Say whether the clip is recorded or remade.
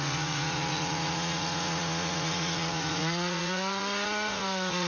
remade